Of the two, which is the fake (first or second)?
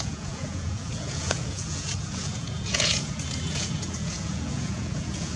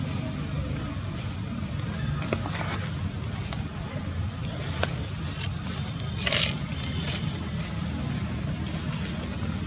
first